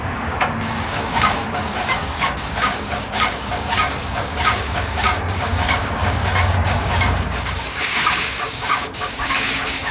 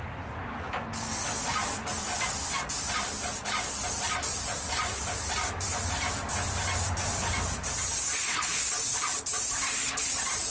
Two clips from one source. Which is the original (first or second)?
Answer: second